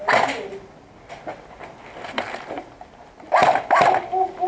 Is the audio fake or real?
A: real